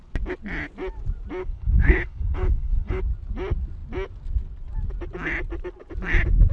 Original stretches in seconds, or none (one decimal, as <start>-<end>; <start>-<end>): 0.0-1.4; 3.0-6.5